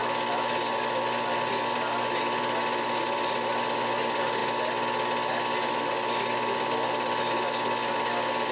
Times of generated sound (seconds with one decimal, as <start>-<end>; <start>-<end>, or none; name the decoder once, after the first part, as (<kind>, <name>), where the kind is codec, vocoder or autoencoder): none